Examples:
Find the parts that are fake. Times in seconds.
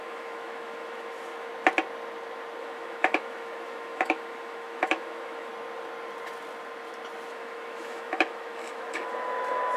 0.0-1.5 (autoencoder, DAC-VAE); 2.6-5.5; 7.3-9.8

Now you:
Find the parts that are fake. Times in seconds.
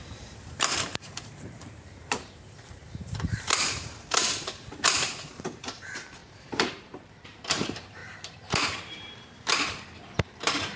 0.0-10.8 (vocoder, BigVGAN v2)